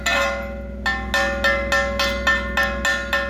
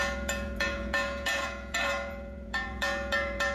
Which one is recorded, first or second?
first